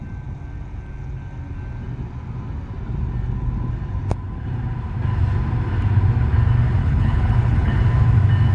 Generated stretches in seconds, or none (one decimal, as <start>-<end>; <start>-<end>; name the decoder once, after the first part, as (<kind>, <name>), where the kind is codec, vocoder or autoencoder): 6.8-7.8 (codec, HILCodec)